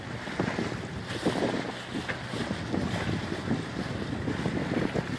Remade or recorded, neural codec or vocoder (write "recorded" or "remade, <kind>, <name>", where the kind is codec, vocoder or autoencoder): recorded